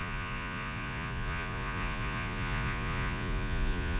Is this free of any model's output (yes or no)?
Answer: no